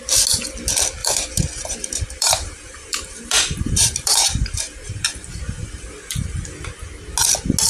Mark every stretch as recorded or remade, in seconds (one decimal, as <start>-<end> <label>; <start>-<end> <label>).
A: 0.0-1.0 recorded; 1.0-5.6 remade; 5.6-7.7 recorded